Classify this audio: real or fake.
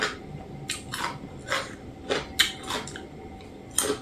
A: real